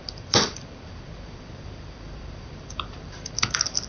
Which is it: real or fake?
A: fake